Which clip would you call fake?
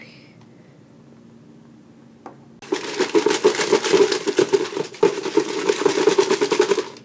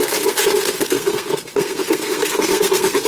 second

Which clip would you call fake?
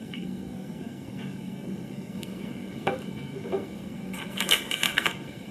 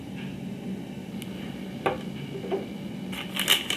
first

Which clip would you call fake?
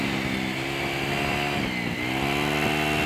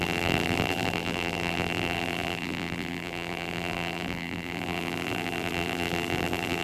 second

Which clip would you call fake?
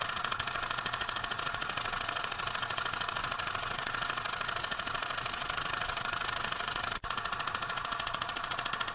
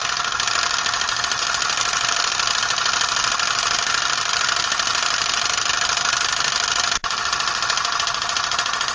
first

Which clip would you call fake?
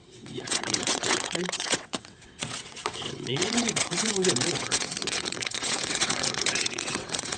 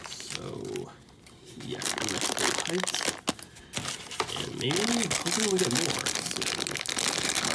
first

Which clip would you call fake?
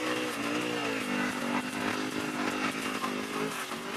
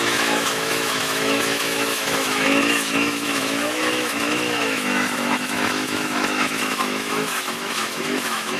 second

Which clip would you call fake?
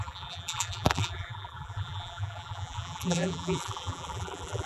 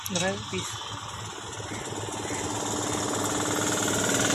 first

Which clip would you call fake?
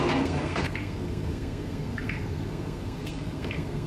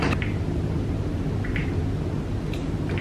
first